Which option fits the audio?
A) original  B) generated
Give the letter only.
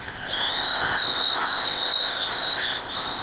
B